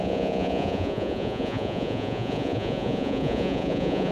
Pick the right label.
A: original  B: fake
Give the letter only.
B